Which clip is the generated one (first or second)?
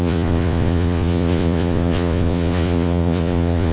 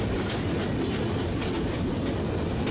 first